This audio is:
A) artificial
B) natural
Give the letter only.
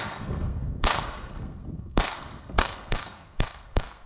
A